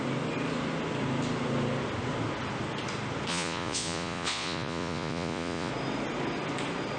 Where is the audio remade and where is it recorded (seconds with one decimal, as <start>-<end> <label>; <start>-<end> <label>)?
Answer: 0.0-3.3 recorded; 3.3-5.7 remade; 5.7-7.0 recorded